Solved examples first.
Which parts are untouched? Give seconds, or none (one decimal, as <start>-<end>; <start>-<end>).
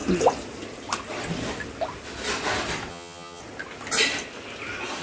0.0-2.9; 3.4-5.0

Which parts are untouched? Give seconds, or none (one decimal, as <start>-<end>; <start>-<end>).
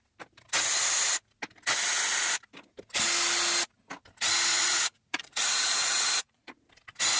0.0-4.5; 6.7-7.2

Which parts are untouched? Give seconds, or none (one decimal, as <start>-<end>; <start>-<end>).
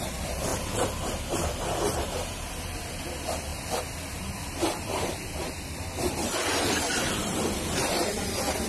0.5-1.6